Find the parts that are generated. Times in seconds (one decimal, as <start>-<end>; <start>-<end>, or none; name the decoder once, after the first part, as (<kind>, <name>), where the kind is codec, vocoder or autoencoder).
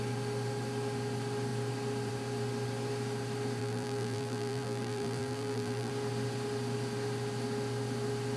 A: 3.6-5.9 (vocoder, BigVGAN v2)